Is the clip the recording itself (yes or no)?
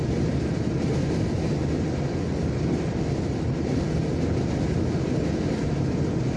yes